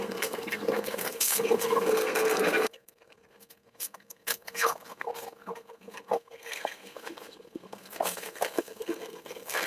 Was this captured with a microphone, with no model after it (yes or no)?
no